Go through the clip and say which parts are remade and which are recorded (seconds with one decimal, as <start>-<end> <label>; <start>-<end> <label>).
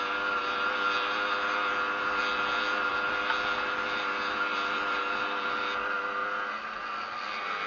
0.0-4.5 recorded; 4.5-5.0 remade; 5.0-7.7 recorded